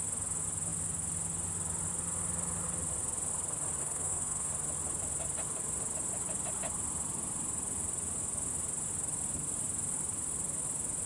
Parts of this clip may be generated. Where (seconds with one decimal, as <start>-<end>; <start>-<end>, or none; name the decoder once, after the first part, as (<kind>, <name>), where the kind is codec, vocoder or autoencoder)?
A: 3.8-4.5 (codec, SNAC)